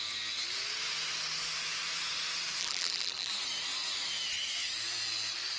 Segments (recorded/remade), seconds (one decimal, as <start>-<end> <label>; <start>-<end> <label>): 0.0-2.6 recorded; 2.6-3.3 remade; 3.3-5.6 recorded